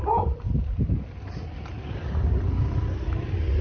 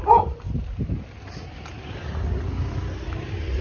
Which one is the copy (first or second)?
first